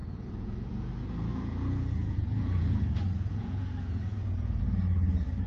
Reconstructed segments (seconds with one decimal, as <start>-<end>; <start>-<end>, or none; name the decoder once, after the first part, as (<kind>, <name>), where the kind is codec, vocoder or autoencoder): 0.0-0.7 (vocoder, Vocos); 1.3-4.6